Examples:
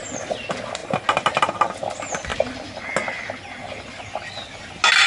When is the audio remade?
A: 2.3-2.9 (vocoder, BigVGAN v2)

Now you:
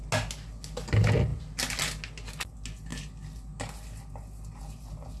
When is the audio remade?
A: none

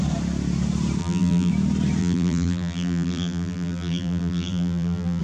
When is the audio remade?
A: 1.0-1.5 (vocoder, BigVGAN v2); 2.0-5.2

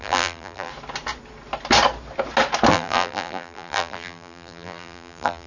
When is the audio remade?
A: 0.0-0.7 (vocoder, BigVGAN v2); 2.7-5.5

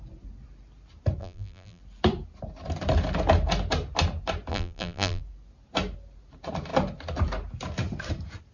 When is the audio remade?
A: 1.2-1.8 (vocoder, BigVGAN v2); 4.5-5.2